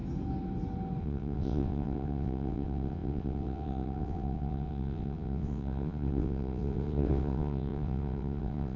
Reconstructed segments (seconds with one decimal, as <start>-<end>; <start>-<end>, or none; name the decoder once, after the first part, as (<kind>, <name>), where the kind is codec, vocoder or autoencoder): 1.0-8.8 (vocoder, WaveNeXt)